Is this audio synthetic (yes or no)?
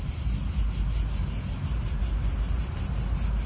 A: no